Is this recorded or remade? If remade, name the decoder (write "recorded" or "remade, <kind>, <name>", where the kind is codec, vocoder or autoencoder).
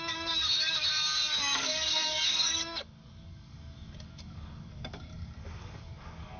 remade, codec, DAC